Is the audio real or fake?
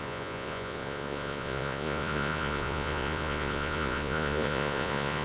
fake